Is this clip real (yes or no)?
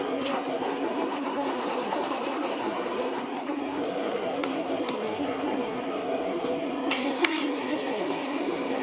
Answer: no